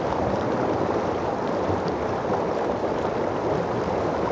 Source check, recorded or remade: recorded